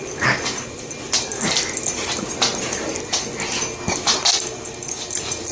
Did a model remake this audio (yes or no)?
no